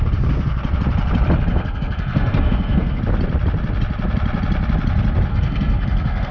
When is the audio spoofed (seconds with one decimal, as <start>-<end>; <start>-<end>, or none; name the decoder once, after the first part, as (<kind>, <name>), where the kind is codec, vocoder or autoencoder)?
1.5-3.0 (codec, SNAC); 5.3-6.3